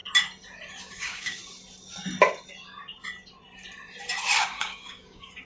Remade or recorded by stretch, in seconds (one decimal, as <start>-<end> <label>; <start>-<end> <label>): 0.0-0.8 recorded; 0.8-1.4 remade; 1.4-4.4 recorded; 4.4-5.4 remade